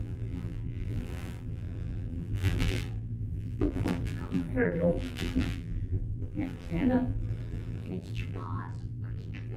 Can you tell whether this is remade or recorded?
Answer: remade